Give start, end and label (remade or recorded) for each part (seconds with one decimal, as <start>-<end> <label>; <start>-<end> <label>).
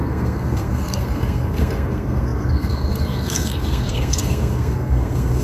0.0-5.4 remade